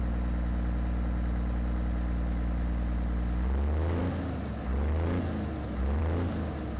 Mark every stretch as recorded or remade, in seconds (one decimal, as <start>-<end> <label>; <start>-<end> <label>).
0.0-6.8 recorded